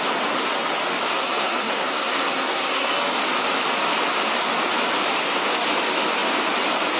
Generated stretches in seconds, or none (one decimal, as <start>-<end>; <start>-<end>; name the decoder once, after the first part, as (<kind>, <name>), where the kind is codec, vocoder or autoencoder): 1.1-2.9 (codec, SNAC)